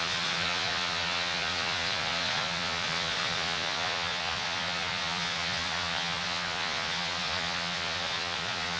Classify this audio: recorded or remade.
remade